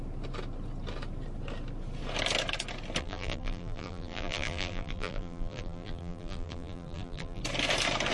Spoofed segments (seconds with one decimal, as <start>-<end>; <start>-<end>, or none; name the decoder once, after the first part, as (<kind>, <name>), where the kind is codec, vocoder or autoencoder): 3.0-7.4 (vocoder, BigVGAN v2)

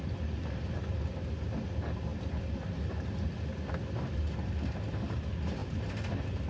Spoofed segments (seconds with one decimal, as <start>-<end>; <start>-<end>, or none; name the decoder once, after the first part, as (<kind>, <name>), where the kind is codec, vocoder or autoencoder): 2.1-4.8 (vocoder, BigVGAN v2)